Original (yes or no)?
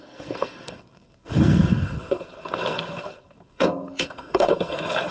no